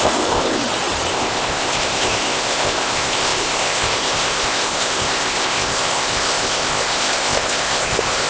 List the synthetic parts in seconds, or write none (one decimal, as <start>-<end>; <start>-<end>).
0.0-0.6; 1.1-8.3